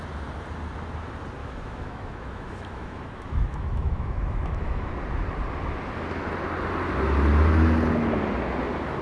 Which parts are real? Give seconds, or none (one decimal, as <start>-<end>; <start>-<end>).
0.0-1.4; 4.9-9.0